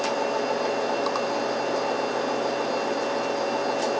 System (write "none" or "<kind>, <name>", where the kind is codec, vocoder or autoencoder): none